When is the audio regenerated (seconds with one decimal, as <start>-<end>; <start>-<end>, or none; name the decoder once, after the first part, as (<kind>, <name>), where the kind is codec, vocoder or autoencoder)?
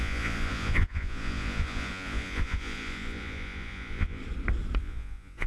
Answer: 0.0-4.2 (vocoder, Vocos); 4.8-5.5